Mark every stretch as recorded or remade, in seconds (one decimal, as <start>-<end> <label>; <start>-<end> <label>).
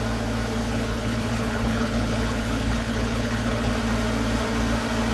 0.0-0.6 recorded; 0.6-3.7 remade; 3.7-5.1 recorded